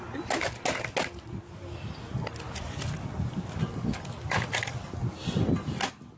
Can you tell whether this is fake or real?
real